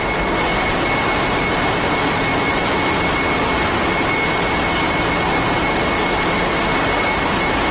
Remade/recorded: recorded